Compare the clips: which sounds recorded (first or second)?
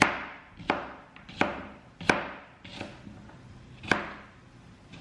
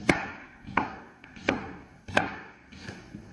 first